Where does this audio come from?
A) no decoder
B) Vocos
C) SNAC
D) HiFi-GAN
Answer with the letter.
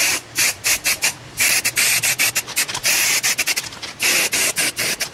A